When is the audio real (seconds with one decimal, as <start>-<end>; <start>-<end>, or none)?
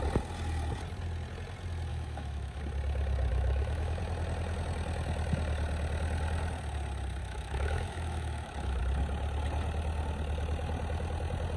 0.0-1.9; 2.6-3.3; 4.0-7.2; 8.8-11.6